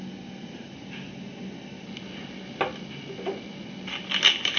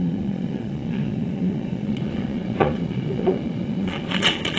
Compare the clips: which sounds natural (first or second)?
first